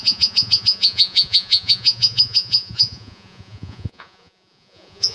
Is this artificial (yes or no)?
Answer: yes